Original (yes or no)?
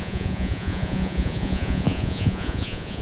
no